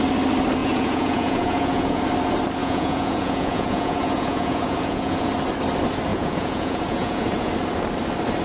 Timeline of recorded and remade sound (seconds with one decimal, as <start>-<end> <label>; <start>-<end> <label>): 0.0-0.6 recorded; 0.6-2.0 remade; 2.0-2.6 recorded; 2.6-5.3 remade; 5.3-6.1 recorded; 6.1-7.5 remade; 7.5-8.4 recorded